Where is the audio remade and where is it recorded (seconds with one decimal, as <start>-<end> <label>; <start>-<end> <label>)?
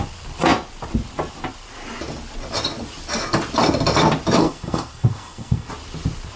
0.0-4.4 recorded; 4.4-5.7 remade; 5.7-6.4 recorded